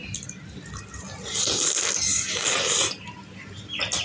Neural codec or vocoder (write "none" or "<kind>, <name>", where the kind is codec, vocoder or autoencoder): none